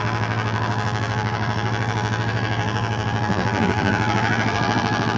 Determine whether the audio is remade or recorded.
remade